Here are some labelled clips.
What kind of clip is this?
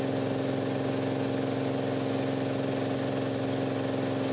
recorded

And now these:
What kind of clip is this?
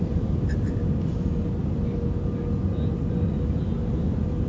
recorded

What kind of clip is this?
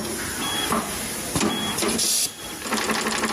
recorded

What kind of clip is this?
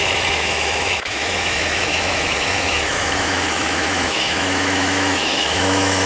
remade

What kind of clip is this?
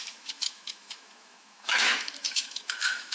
remade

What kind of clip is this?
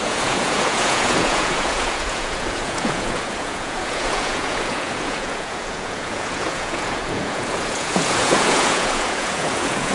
remade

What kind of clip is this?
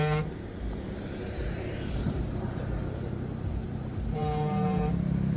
remade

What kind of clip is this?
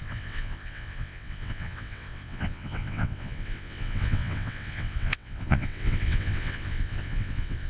remade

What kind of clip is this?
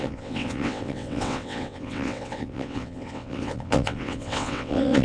remade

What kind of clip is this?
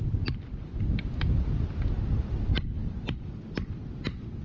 recorded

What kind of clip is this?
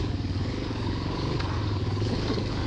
remade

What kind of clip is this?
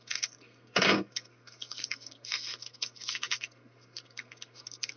remade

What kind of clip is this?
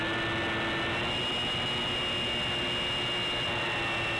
recorded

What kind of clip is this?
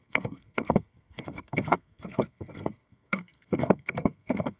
remade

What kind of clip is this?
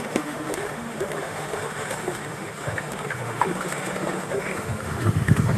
remade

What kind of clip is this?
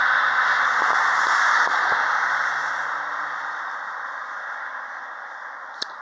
recorded